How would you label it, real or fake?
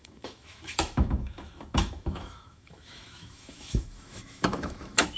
fake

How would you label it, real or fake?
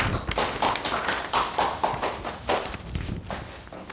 real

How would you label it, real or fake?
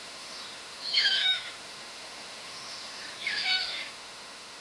fake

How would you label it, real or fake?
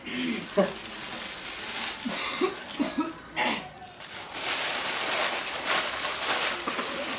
real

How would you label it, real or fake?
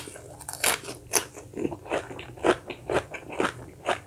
real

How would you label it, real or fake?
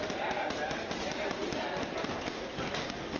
real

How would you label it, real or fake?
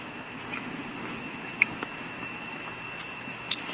fake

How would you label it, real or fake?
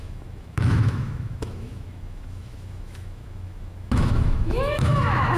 fake